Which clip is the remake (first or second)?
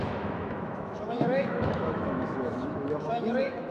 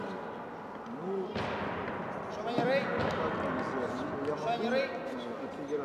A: first